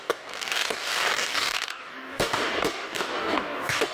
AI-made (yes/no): yes